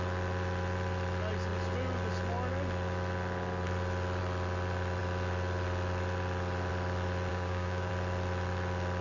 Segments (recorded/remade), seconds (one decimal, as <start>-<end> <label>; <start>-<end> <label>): 0.0-7.3 recorded; 7.3-7.9 remade; 7.9-9.0 recorded